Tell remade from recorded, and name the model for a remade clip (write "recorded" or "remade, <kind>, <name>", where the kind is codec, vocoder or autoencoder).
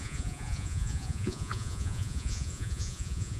remade, vocoder, Vocos